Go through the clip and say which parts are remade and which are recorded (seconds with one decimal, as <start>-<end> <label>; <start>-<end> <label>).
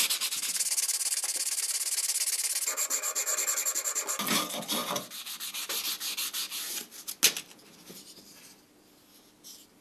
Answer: 0.0-9.8 recorded